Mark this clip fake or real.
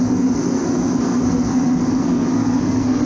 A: fake